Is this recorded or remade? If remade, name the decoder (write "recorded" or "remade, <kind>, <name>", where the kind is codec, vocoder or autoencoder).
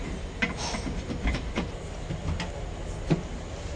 recorded